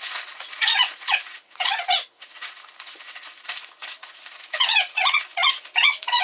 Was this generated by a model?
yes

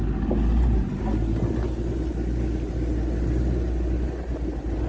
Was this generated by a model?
no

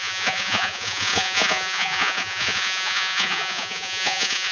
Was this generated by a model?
yes